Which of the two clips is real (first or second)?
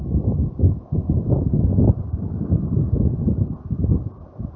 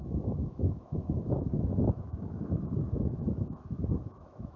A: first